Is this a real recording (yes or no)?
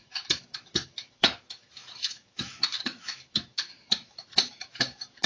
no